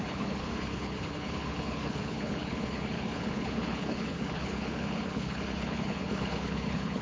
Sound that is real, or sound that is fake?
fake